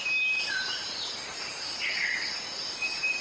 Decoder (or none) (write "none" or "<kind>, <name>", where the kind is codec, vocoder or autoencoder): vocoder, BigVGAN v2